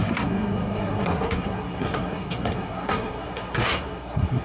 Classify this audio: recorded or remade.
remade